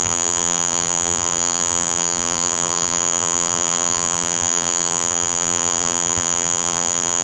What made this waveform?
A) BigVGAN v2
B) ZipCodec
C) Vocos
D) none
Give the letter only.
A